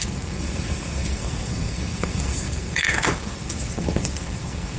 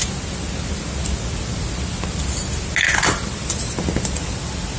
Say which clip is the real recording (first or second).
second